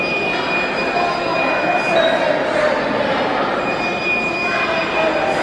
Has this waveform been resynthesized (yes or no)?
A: no